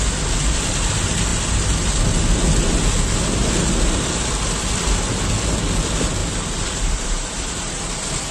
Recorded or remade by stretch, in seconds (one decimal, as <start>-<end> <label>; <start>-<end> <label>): 0.0-6.2 recorded; 6.2-7.8 remade; 7.8-8.3 recorded